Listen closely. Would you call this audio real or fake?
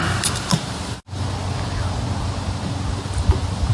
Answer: real